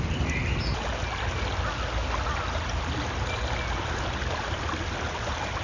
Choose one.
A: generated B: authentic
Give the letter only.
B